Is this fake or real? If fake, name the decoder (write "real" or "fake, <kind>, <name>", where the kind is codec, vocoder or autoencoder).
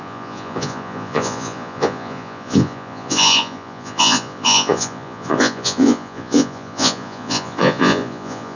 fake, vocoder, Vocos